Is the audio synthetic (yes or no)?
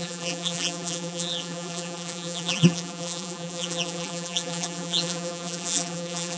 yes